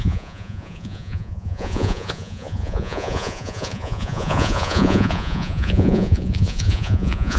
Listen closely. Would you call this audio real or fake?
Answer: fake